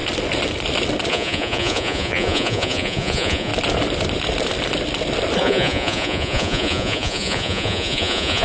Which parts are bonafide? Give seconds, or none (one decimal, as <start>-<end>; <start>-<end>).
0.0-1.1; 3.5-5.4